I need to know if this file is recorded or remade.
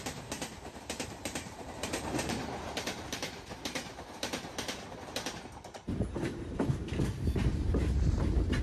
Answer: remade